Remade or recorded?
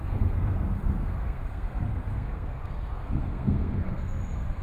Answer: remade